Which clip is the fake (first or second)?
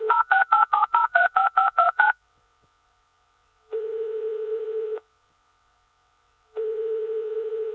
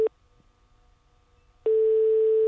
first